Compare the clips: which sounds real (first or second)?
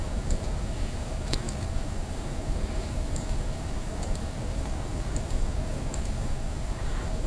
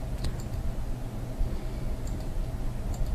second